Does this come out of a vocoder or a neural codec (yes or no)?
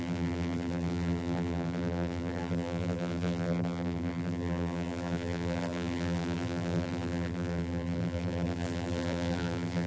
yes